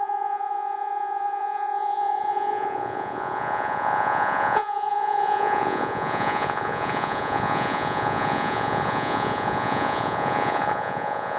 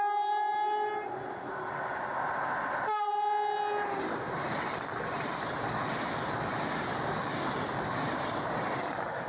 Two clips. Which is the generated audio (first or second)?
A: first